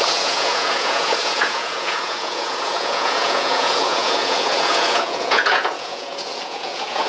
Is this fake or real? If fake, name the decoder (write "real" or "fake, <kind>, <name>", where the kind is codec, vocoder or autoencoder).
fake, vocoder, Vocos